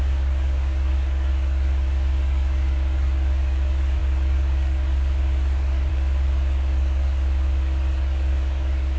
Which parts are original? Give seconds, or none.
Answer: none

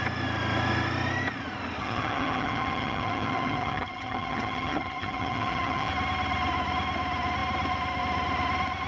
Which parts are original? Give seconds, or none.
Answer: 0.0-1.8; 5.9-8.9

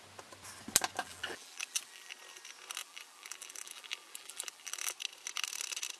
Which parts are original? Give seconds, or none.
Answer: 0.0-1.0; 2.1-2.8; 4.9-6.0